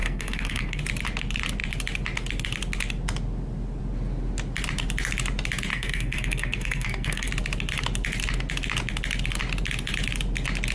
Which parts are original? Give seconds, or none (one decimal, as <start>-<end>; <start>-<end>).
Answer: 0.8-5.7; 7.3-10.7